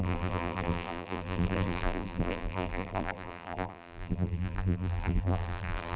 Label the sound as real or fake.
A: fake